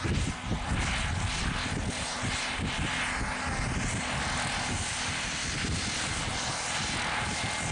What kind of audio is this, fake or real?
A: real